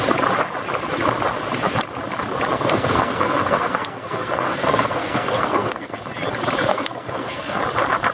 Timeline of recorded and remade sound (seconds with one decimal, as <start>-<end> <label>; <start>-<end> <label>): 0.0-2.5 recorded; 2.5-6.0 remade; 6.0-6.7 recorded; 6.7-7.6 remade; 7.6-8.1 recorded